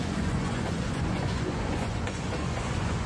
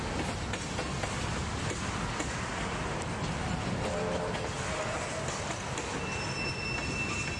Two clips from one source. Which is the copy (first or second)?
first